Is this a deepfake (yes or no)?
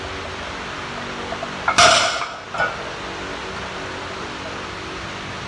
no